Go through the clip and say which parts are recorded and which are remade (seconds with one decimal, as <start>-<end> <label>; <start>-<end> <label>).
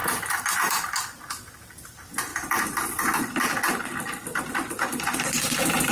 0.0-2.3 remade; 2.3-4.5 recorded; 4.5-5.9 remade